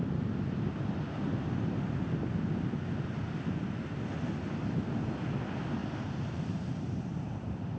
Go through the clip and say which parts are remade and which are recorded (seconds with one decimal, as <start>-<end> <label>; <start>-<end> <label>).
0.0-5.8 recorded; 5.8-7.8 remade